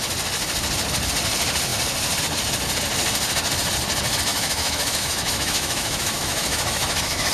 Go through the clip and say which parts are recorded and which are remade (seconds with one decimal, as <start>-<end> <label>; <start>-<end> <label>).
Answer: 0.0-4.3 recorded; 4.3-7.3 remade